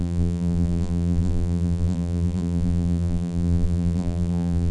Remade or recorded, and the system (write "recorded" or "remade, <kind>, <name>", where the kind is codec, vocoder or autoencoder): remade, vocoder, BigVGAN v2